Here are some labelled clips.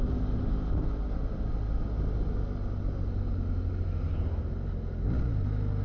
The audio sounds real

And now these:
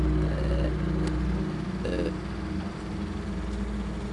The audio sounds real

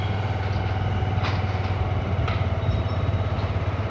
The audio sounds real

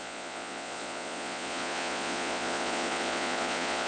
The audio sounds fake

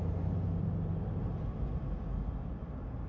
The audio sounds real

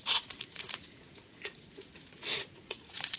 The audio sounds fake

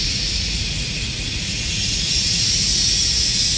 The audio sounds fake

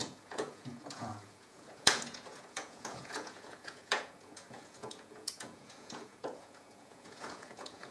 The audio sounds fake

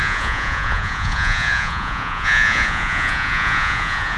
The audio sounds fake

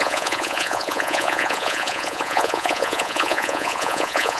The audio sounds fake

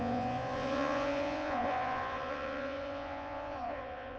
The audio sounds fake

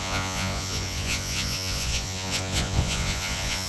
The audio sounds fake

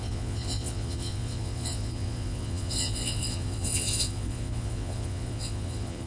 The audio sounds fake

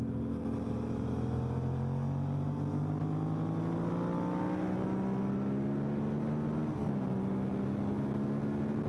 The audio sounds real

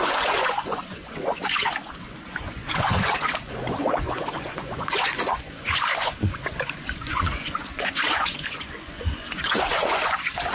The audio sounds fake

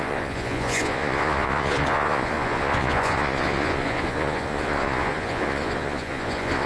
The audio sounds fake